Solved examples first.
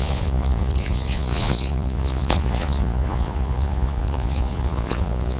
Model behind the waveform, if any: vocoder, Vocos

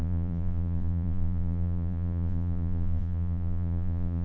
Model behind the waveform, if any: vocoder, Vocos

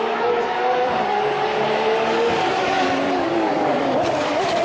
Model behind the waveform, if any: codec, DAC